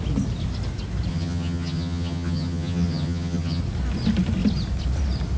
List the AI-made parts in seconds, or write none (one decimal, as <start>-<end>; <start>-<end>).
1.1-3.6